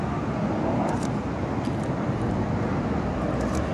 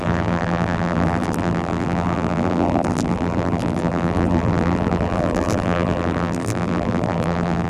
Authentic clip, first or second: first